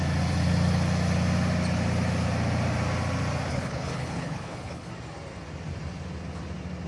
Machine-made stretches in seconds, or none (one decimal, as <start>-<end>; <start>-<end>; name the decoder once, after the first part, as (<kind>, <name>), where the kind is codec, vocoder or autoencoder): 3.5-4.9 (codec, HILCodec)